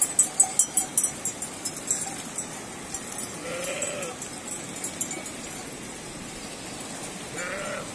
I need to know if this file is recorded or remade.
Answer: recorded